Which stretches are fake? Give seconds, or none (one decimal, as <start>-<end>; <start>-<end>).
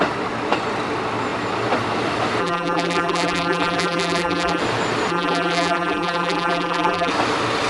2.4-4.6; 5.1-7.1